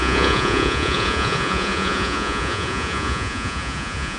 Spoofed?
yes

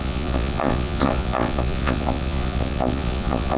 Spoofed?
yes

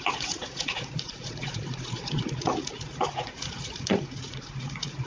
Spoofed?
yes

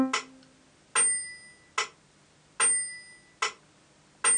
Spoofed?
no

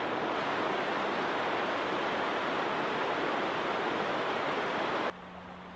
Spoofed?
no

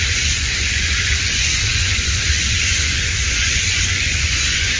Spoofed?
yes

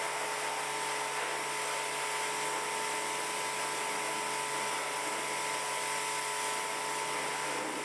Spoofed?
no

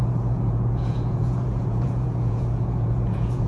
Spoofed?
yes